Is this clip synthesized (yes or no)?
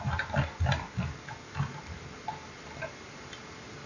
no